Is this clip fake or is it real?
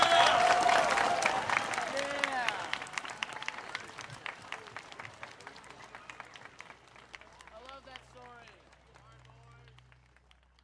real